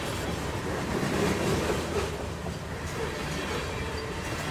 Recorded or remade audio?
recorded